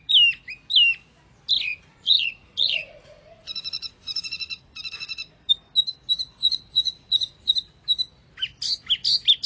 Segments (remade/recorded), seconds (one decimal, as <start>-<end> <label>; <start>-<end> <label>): 0.0-1.7 recorded; 1.7-5.5 remade; 5.5-6.4 recorded; 6.4-7.5 remade; 7.5-9.5 recorded